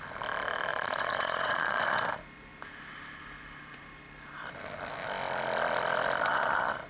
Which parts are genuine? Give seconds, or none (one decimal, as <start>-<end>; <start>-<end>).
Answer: 0.0-0.7; 1.8-6.9